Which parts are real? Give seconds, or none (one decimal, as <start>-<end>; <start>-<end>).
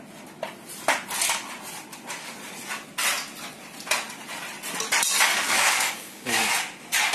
0.0-5.3; 6.5-7.1